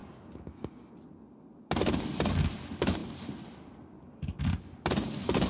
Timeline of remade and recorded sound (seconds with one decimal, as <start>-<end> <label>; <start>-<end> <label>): 0.0-0.9 remade; 0.9-5.5 recorded